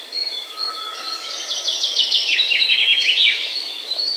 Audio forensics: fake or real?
fake